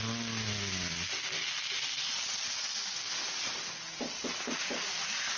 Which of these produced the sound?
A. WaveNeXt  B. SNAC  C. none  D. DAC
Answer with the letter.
C